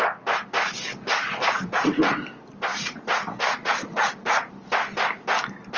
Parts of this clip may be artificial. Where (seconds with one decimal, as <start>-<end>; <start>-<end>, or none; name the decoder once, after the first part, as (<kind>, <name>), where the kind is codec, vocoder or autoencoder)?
1.4-2.1 (vocoder, Vocos); 2.7-4.5